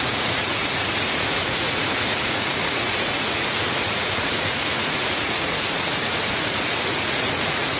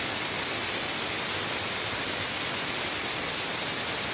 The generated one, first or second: first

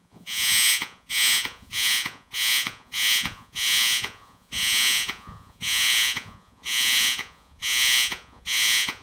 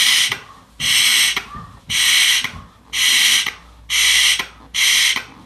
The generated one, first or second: first